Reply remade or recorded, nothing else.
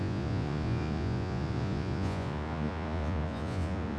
remade